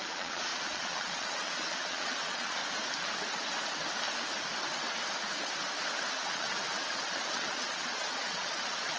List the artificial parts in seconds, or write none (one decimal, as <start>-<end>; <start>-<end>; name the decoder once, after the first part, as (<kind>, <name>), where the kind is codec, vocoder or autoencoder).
0.0-2.6 (vocoder, Vocos); 6.1-9.0